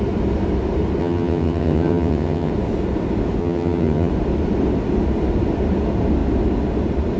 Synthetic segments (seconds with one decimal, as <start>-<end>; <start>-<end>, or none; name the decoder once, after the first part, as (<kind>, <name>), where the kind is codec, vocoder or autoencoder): 1.0-2.5 (vocoder, HiFi-GAN); 3.4-4.1